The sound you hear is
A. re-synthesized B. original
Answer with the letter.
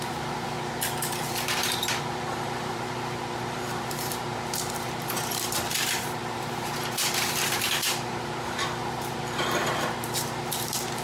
A